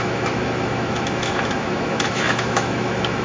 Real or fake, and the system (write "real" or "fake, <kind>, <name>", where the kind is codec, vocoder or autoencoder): fake, autoencoder, DAC-VAE